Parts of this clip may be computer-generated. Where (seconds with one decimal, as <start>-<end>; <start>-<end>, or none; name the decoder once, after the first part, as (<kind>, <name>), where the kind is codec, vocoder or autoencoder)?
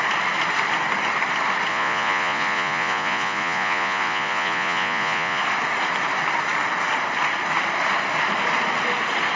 1.7-5.4 (vocoder, Vocos)